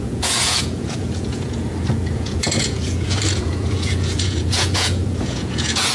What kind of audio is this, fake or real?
fake